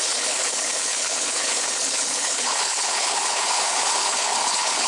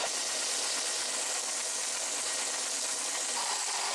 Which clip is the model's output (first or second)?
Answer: first